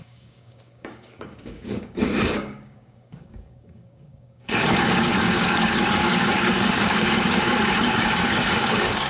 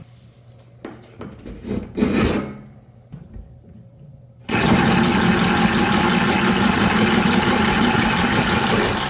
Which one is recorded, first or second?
second